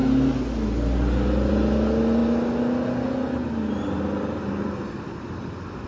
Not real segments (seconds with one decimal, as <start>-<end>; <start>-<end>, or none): none